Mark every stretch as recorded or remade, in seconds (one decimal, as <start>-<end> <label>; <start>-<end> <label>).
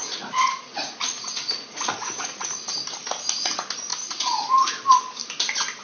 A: 0.0-2.7 remade; 2.7-3.9 recorded; 3.9-4.7 remade; 4.7-5.8 recorded